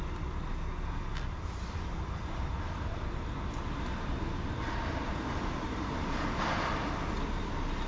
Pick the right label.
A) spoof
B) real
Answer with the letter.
B